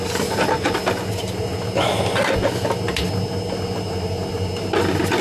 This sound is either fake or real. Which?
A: real